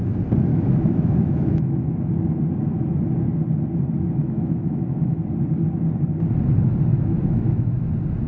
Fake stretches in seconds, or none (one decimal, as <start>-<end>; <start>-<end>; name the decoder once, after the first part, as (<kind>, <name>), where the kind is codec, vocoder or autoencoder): 0.5-2.0 (autoencoder, DAC-VAE); 4.2-5.2; 6.9-7.9